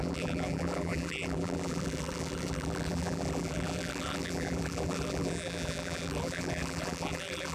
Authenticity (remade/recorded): remade